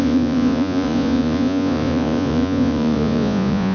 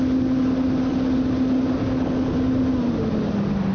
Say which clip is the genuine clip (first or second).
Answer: second